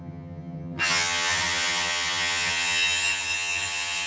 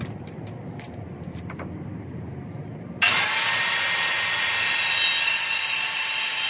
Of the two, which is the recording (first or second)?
second